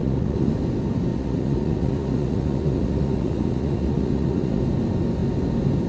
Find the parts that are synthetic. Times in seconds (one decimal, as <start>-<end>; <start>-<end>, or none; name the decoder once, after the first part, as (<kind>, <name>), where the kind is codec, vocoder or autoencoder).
0.0-0.5 (vocoder, Vocos); 1.1-4.6